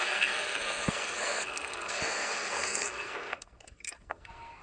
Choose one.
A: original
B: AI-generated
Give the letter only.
B